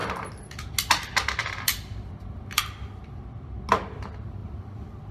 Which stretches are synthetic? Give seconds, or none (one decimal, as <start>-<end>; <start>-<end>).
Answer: 1.4-2.6; 4.4-5.1